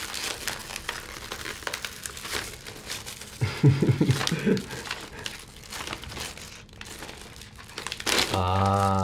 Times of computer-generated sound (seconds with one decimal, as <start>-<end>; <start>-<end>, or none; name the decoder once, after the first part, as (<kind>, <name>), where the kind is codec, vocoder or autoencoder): none